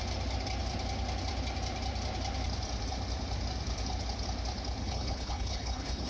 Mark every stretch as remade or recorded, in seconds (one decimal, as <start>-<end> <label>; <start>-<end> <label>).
0.0-4.8 recorded; 4.8-6.1 remade